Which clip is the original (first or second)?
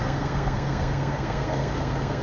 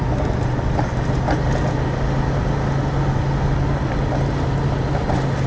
second